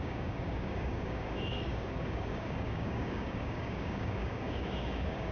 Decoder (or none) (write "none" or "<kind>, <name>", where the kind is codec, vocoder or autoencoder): codec, DAC